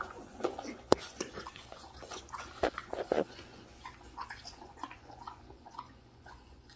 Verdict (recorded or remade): remade